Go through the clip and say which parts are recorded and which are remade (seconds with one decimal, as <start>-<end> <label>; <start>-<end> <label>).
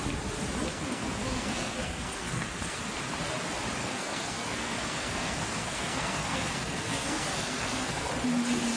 0.0-0.7 recorded; 0.7-2.8 remade; 2.8-3.8 recorded; 3.8-8.1 remade; 8.1-8.8 recorded